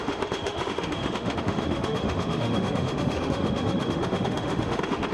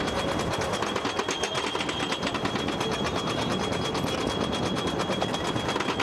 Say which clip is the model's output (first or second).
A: first